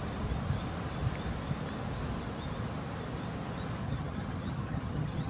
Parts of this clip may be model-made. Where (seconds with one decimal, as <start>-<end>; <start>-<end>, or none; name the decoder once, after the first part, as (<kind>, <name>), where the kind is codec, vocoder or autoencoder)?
3.8-5.3 (vocoder, HiFi-GAN)